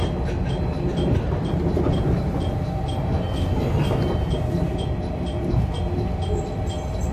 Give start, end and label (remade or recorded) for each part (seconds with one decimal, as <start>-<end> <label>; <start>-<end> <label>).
0.0-7.1 recorded